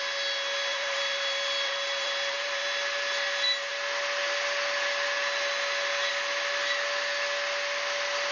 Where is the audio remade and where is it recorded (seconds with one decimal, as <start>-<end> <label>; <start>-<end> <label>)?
0.0-0.7 recorded; 0.7-2.6 remade; 2.6-8.3 recorded